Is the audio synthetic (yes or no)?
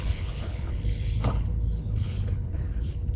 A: yes